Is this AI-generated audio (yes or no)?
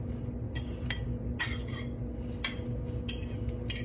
no